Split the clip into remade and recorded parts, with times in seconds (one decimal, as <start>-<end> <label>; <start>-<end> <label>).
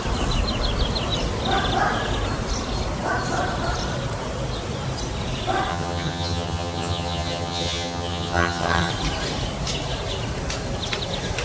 0.0-5.7 recorded; 5.7-8.9 remade; 8.9-11.4 recorded